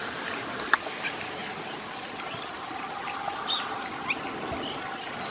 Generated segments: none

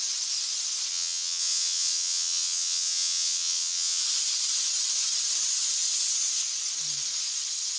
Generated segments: 0.9-4.0